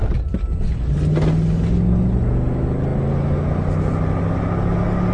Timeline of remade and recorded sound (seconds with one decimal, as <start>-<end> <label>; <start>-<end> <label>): 0.0-5.1 recorded